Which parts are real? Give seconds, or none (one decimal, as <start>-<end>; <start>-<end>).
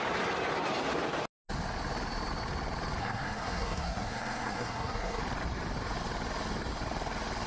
0.0-3.0; 5.2-7.5